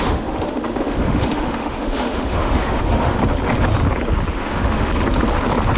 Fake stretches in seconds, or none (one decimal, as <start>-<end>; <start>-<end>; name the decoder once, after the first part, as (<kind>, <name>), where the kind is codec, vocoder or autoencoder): 0.0-3.2 (autoencoder, DAC-VAE); 4.3-4.9